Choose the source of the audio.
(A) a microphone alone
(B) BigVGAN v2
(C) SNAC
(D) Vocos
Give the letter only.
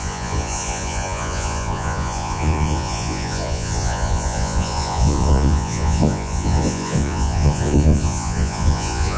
D